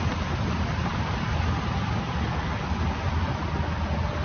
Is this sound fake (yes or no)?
no